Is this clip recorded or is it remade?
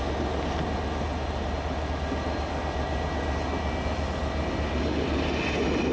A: recorded